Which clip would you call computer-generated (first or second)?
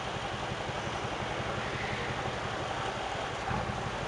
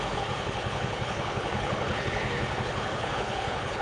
second